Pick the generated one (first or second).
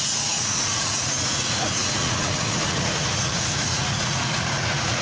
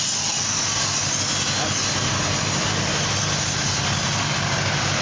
first